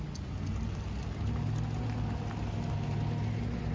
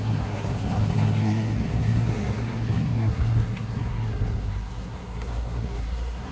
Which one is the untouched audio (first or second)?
first